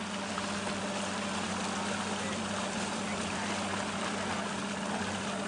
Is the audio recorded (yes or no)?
yes